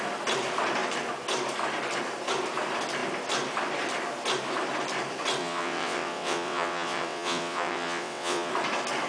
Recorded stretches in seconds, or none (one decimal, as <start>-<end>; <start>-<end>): 0.0-5.4; 8.5-9.1